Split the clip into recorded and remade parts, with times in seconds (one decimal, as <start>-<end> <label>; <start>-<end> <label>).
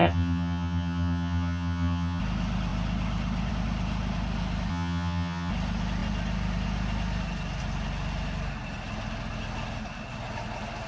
0.0-2.2 remade; 2.2-4.7 recorded; 4.7-5.5 remade; 5.5-10.9 recorded